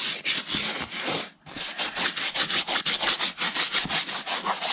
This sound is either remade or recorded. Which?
recorded